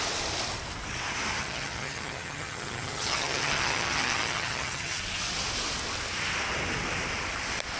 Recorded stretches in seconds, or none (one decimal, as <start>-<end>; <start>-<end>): 0.0-1.4; 5.0-7.8